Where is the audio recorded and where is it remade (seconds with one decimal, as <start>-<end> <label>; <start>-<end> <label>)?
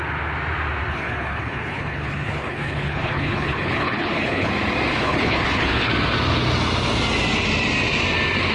0.0-0.9 recorded; 0.9-4.5 remade; 4.5-4.9 recorded; 4.9-5.9 remade; 5.9-8.5 recorded